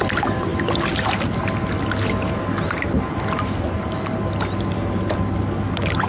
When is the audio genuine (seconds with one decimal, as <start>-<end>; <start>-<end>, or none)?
0.0-6.1